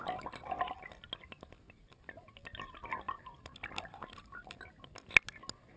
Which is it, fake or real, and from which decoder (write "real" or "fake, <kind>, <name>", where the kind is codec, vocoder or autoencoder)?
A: real